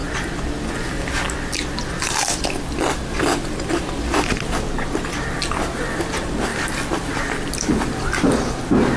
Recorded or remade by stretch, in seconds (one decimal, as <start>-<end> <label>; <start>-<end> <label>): 0.0-6.5 recorded; 6.5-8.4 remade; 8.4-9.0 recorded